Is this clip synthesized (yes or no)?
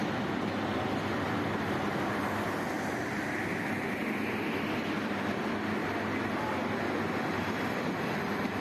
no